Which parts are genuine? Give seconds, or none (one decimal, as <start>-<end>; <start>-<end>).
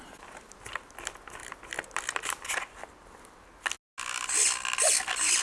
0.0-5.4